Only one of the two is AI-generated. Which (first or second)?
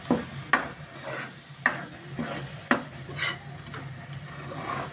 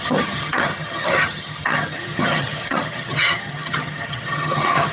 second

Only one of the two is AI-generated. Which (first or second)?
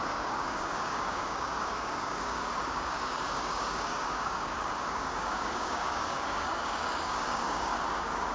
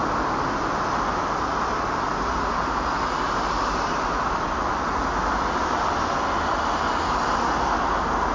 first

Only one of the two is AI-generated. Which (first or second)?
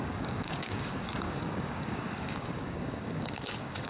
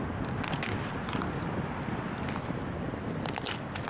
first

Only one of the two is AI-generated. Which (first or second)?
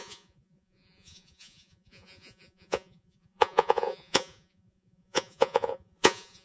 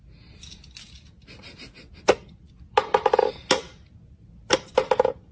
first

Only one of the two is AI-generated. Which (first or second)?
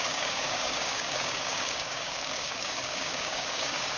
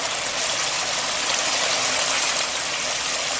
first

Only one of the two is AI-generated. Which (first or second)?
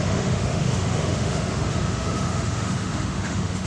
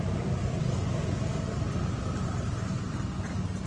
first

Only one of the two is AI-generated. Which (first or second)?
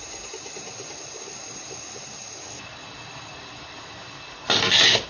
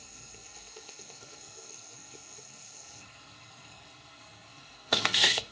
second